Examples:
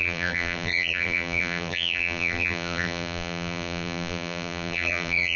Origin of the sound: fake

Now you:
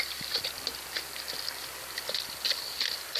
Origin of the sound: real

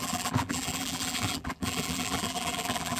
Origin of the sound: fake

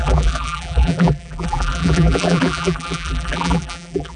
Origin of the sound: fake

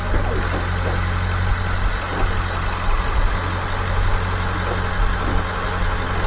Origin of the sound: real